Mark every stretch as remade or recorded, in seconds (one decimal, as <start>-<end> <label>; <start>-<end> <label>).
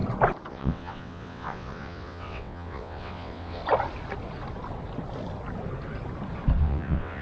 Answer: 0.0-0.5 recorded; 0.5-3.6 remade; 3.6-6.6 recorded; 6.6-7.2 remade